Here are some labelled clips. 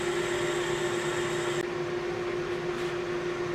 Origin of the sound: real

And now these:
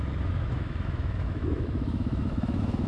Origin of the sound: fake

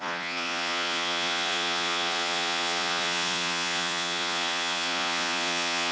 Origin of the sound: fake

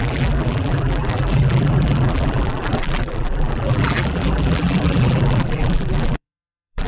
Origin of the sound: fake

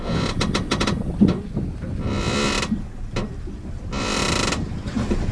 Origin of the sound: real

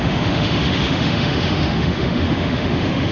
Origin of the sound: fake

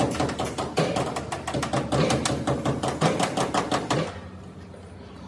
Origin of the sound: real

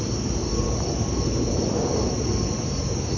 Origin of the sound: fake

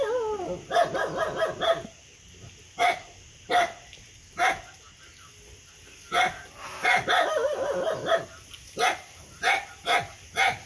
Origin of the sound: real